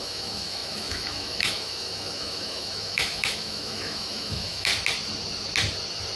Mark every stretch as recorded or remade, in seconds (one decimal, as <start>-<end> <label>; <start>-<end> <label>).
0.0-4.7 remade; 4.7-6.2 recorded